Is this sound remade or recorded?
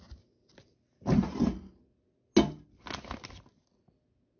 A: recorded